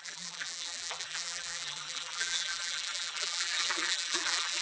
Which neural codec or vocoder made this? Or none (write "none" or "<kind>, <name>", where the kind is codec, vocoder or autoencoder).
vocoder, BigVGAN v2